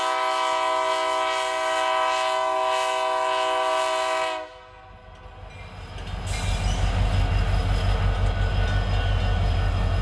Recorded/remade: recorded